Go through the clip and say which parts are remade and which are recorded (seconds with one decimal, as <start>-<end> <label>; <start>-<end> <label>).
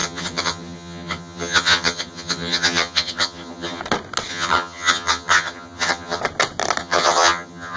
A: 0.0-3.8 remade; 3.8-4.3 recorded; 4.3-6.2 remade; 6.2-6.8 recorded; 6.8-7.8 remade